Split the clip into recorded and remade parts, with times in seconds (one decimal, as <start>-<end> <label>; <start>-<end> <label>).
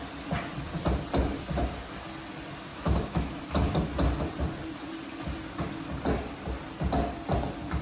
0.0-2.7 recorded; 2.7-3.4 remade; 3.4-7.8 recorded